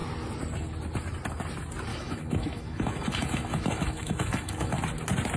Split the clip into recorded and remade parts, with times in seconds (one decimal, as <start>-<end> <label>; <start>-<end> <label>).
0.0-1.9 recorded; 1.9-4.8 remade; 4.8-5.4 recorded